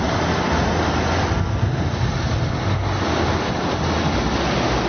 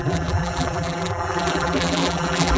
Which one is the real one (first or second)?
first